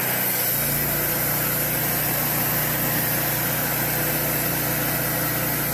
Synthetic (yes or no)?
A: no